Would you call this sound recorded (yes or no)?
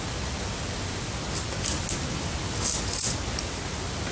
yes